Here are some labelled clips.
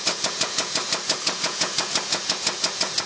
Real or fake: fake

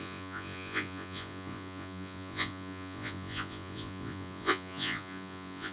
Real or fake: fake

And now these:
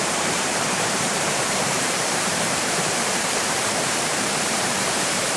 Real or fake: fake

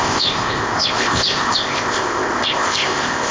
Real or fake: fake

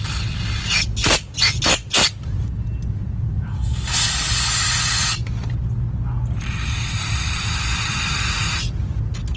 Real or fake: real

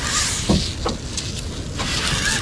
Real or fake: real